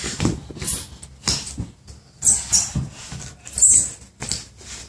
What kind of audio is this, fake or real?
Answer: real